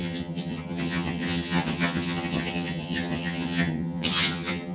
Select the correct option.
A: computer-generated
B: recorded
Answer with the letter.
A